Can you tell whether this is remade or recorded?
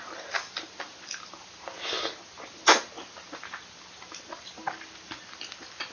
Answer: recorded